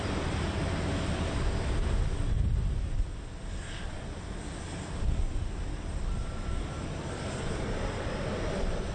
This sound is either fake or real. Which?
real